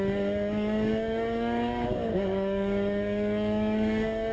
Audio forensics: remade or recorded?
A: remade